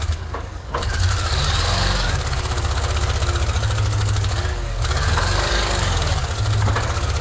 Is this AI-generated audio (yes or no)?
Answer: yes